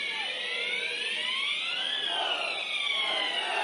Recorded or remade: recorded